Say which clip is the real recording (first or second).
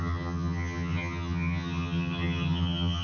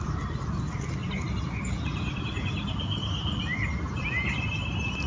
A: second